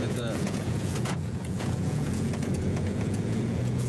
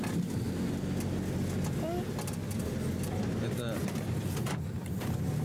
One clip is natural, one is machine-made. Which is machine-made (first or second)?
first